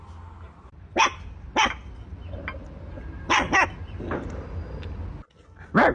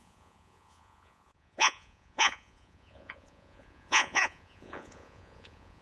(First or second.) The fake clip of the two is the second